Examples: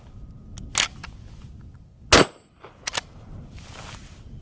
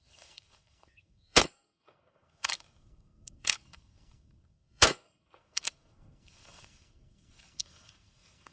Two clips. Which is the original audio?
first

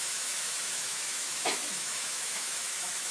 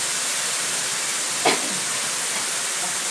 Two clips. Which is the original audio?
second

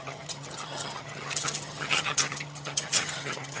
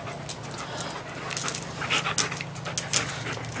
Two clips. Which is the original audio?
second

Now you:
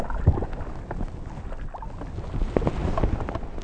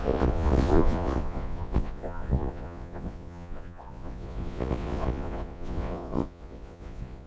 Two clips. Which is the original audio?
first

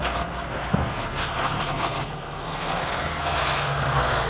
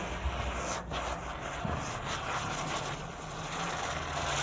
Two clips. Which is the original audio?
second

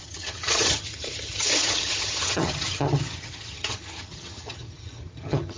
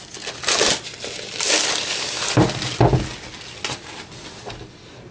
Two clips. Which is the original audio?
second